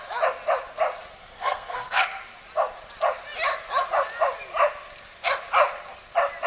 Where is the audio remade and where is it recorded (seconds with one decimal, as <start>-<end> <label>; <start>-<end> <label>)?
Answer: 0.0-1.2 recorded; 1.2-2.0 remade; 2.0-6.5 recorded